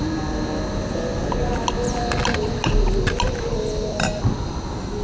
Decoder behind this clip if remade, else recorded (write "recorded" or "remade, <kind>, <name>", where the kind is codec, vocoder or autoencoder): recorded